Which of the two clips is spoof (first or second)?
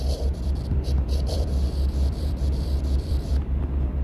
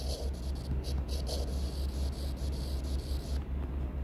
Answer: first